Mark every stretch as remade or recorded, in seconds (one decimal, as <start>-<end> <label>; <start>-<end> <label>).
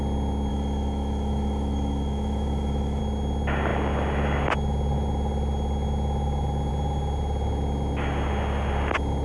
0.0-0.5 recorded; 0.5-3.0 remade; 3.0-9.2 recorded